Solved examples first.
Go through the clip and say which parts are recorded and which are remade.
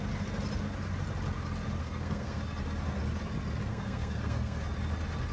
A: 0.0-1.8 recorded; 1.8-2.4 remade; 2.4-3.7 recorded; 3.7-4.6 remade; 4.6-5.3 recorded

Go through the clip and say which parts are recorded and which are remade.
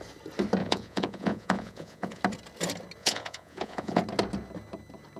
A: 0.0-0.6 recorded; 0.6-2.2 remade; 2.2-3.0 recorded; 3.0-4.0 remade; 4.0-5.2 recorded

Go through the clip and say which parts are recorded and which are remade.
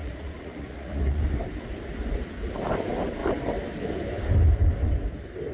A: 0.0-1.2 remade; 1.2-5.5 recorded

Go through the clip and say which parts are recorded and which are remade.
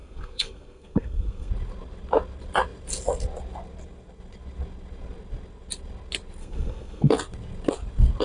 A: 0.0-1.5 remade; 1.5-6.4 recorded; 6.4-7.1 remade; 7.1-8.2 recorded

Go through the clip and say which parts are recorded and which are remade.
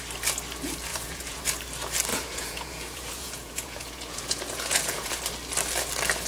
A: 0.0-0.9 recorded; 0.9-1.4 remade; 1.4-2.1 recorded; 2.1-5.1 remade; 5.1-6.3 recorded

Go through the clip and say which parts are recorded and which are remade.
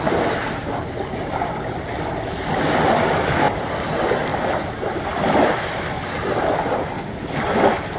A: 0.0-8.0 recorded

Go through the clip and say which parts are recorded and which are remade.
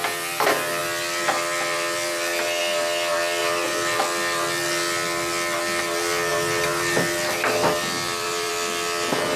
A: 0.0-3.4 recorded; 3.4-4.0 remade; 4.0-6.3 recorded; 6.3-8.5 remade; 8.5-9.4 recorded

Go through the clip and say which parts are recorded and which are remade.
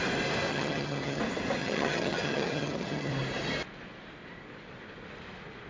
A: 0.0-0.5 recorded; 0.5-1.2 remade; 1.2-1.6 recorded; 1.6-3.1 remade; 3.1-5.7 recorded